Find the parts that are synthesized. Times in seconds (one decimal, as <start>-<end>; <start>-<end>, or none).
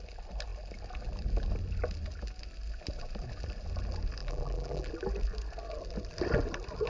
4.2-4.9